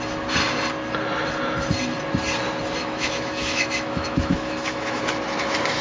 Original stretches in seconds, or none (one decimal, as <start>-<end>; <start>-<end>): 0.0-2.8; 5.0-5.8